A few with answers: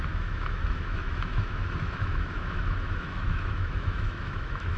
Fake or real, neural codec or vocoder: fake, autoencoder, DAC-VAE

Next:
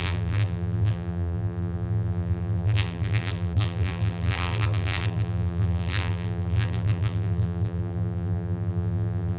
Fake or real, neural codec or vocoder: fake, vocoder, BigVGAN v2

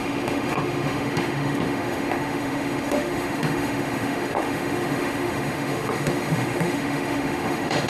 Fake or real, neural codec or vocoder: fake, autoencoder, DAC-VAE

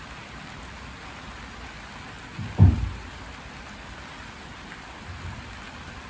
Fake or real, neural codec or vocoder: real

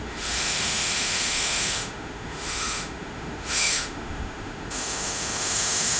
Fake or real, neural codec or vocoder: fake, autoencoder, DAC-VAE